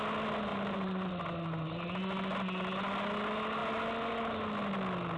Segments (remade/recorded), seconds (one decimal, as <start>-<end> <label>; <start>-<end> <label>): 0.0-0.5 recorded; 0.5-1.1 remade; 1.1-5.2 recorded